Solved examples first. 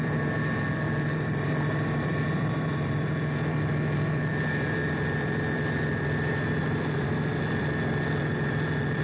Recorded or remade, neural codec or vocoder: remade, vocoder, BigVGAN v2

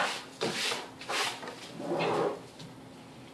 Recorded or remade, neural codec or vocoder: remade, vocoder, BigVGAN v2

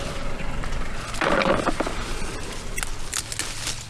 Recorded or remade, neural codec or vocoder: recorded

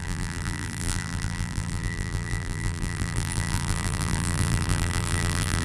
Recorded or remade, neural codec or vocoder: remade, vocoder, BigVGAN v2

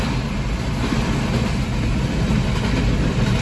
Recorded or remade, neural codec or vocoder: recorded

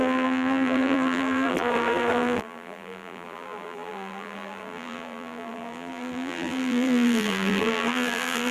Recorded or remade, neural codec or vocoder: remade, vocoder, BigVGAN v2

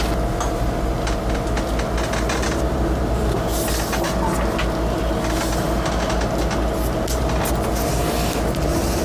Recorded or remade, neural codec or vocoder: recorded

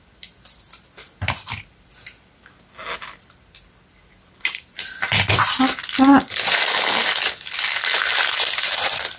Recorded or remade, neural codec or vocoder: recorded